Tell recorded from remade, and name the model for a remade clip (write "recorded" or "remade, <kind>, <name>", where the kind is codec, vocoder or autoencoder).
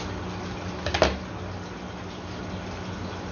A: recorded